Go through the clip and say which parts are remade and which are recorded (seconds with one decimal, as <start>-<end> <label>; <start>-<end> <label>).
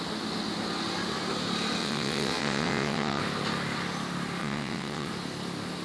0.0-1.8 recorded; 1.8-3.2 remade; 3.2-4.4 recorded; 4.4-5.1 remade; 5.1-5.8 recorded